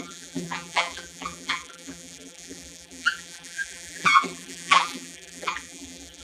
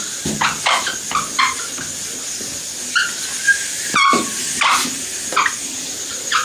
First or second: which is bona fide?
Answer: second